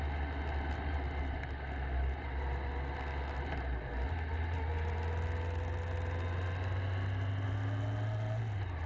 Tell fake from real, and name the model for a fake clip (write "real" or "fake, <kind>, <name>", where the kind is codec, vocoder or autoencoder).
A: real